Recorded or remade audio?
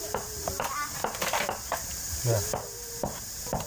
remade